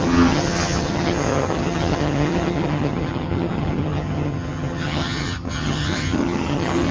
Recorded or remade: remade